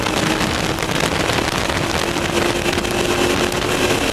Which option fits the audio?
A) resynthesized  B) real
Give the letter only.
B